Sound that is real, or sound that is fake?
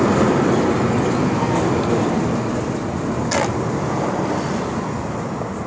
real